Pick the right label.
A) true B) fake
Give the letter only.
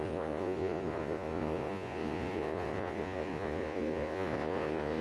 B